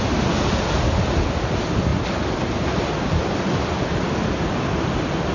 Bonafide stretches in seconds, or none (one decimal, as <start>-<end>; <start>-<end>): 0.0-5.3